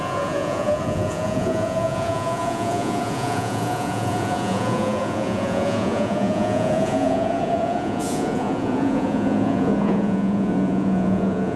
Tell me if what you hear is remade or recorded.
remade